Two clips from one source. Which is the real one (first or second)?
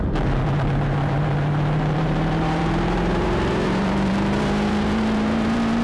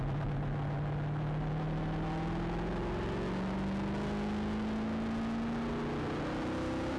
second